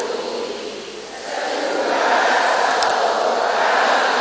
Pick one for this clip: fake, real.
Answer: real